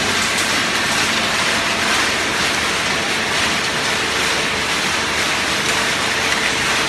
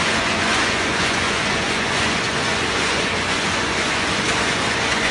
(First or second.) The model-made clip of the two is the second